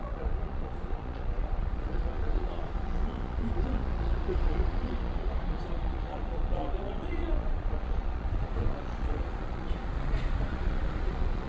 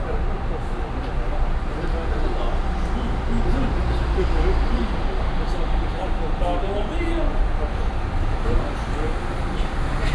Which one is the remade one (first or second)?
first